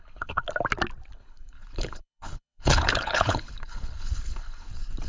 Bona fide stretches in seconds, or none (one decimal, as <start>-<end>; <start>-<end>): 0.4-1.1